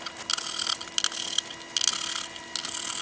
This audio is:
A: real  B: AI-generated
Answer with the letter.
A